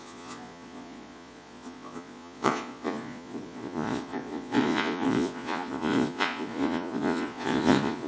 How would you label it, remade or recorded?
remade